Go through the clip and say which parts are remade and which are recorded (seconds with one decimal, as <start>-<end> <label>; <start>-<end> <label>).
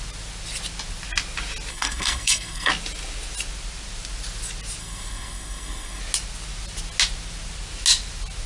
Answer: 0.0-1.7 recorded; 1.7-2.7 remade; 2.7-4.8 recorded; 4.8-6.0 remade; 6.0-8.5 recorded